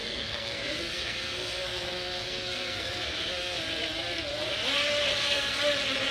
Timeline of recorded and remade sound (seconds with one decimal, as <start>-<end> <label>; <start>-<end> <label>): 0.0-3.6 remade; 3.6-5.1 recorded; 5.1-5.6 remade; 5.6-6.1 recorded

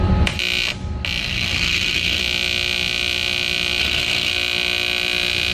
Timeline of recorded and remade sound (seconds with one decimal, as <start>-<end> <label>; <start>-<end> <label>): 0.0-1.2 recorded; 1.2-2.2 remade; 2.2-3.8 recorded; 3.8-4.3 remade; 4.3-5.5 recorded

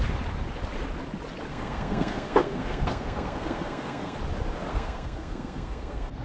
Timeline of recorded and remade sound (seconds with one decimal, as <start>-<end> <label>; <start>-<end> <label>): 0.0-1.5 recorded; 1.5-4.2 remade; 4.2-4.7 recorded; 4.7-6.2 remade

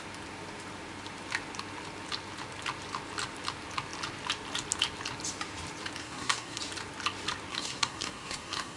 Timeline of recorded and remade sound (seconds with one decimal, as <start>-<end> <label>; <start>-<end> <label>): 0.0-6.0 recorded; 6.0-6.6 remade; 6.6-7.5 recorded; 7.5-8.8 remade

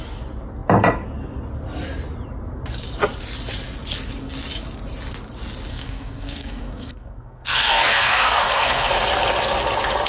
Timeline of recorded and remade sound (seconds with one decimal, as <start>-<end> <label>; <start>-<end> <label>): 0.0-5.7 recorded; 5.7-8.9 remade; 8.9-10.1 recorded

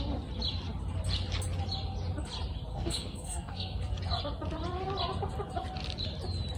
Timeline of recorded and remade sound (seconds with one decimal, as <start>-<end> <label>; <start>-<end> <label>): 0.0-2.7 recorded; 2.7-3.9 remade; 3.9-6.6 recorded